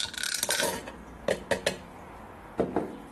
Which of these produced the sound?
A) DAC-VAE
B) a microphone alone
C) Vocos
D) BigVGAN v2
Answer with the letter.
B